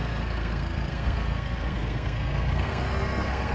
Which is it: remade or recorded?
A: remade